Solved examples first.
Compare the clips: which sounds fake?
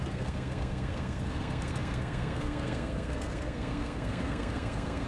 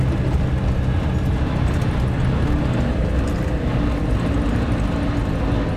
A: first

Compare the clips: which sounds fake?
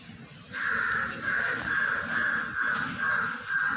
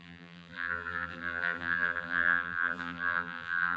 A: second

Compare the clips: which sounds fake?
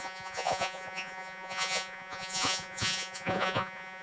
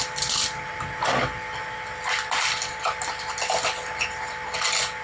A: first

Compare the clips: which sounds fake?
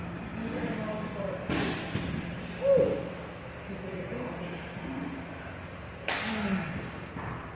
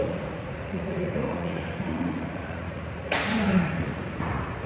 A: second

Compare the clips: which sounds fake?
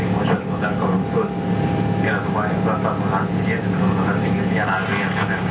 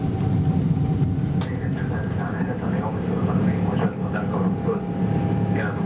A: second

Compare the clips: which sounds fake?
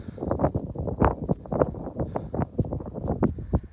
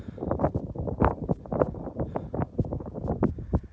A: second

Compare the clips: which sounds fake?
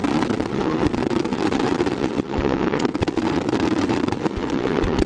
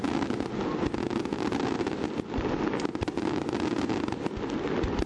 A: first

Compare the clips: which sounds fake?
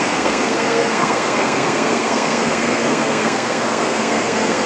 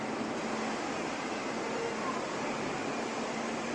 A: first